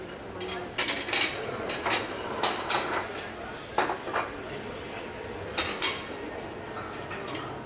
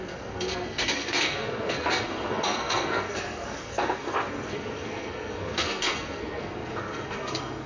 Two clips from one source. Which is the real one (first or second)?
first